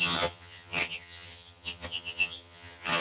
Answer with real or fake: fake